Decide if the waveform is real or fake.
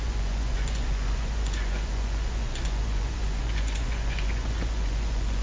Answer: fake